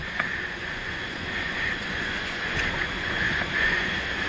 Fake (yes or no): yes